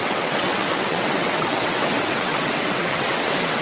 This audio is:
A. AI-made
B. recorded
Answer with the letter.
A